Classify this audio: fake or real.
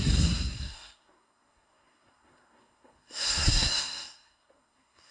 fake